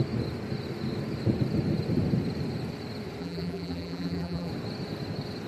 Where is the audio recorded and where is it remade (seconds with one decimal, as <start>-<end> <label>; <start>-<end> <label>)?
0.0-3.2 recorded; 3.2-4.5 remade; 4.5-5.5 recorded